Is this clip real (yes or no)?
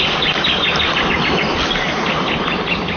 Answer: yes